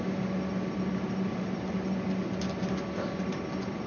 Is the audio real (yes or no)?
yes